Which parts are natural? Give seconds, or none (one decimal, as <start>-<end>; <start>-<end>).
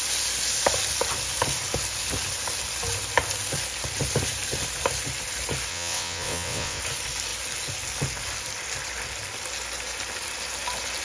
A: 0.0-5.7; 6.8-11.0